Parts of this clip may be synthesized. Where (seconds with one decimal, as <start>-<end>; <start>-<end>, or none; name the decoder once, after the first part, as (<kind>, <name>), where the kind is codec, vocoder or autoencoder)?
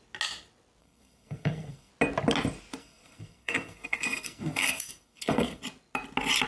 0.8-1.9 (codec, SNAC); 2.8-5.6